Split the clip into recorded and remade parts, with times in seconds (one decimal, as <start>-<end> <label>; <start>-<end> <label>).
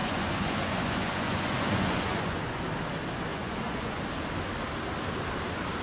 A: 0.0-2.6 remade; 2.6-3.3 recorded; 3.3-4.0 remade; 4.0-5.8 recorded